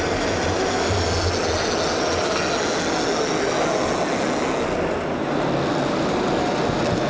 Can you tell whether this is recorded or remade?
recorded